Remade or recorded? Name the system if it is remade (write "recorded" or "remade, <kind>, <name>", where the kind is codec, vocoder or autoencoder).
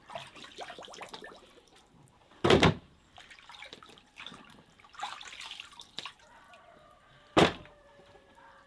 remade, vocoder, BigVGAN v2